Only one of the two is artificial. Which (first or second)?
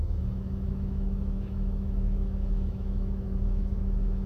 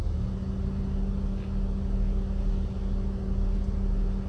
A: first